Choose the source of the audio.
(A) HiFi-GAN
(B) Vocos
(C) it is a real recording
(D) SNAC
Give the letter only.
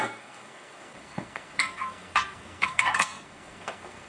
D